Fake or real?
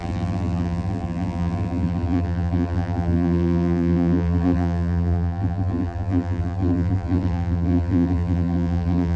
fake